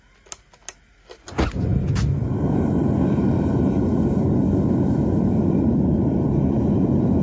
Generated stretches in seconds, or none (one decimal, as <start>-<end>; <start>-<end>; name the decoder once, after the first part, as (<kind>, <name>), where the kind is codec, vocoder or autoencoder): none